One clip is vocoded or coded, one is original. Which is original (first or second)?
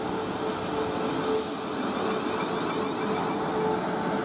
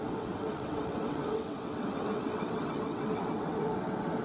first